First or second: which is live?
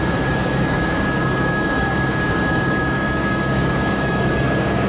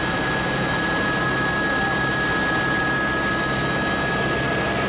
second